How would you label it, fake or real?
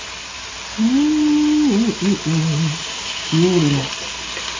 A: real